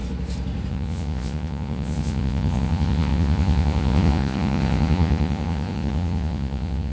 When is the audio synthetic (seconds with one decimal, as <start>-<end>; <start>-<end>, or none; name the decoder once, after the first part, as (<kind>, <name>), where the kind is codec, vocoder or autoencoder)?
0.7-6.9 (vocoder, Vocos)